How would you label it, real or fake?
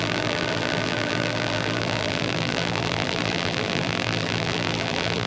fake